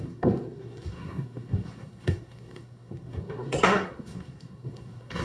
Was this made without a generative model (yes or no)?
no